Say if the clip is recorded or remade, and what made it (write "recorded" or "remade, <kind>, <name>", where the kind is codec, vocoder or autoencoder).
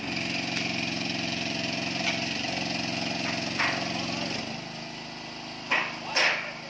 recorded